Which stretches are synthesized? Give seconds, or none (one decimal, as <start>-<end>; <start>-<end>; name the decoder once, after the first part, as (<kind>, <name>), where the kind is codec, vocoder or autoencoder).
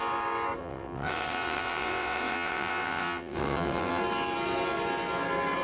0.6-4.0 (vocoder, WaveNeXt)